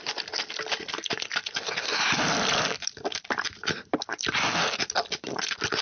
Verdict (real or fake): real